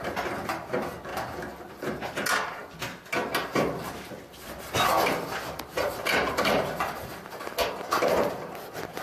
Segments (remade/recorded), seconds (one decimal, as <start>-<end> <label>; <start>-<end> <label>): 0.0-9.0 recorded